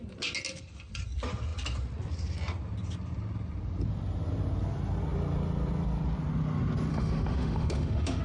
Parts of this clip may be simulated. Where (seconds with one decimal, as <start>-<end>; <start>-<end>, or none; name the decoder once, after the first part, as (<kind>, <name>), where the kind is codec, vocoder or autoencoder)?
6.9-8.2 (autoencoder, DAC-VAE)